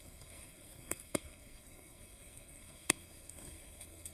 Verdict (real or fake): fake